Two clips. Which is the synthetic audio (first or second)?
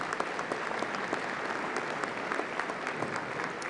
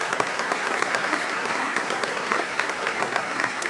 second